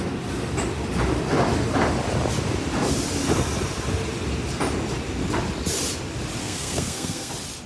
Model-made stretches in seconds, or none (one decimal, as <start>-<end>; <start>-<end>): 6.4-7.3

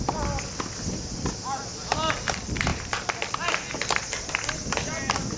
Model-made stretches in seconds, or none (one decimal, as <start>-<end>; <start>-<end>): none